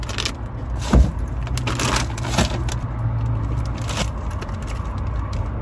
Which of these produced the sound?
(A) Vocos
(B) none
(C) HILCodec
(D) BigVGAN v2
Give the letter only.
B